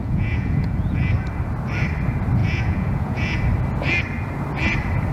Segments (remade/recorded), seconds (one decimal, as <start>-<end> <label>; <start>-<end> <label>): 0.0-1.0 remade; 1.0-2.4 recorded; 2.4-3.4 remade; 3.4-5.1 recorded